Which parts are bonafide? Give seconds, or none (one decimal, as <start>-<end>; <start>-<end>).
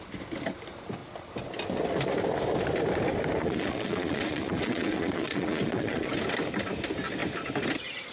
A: 0.0-3.4; 6.1-8.1